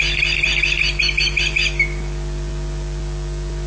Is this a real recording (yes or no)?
yes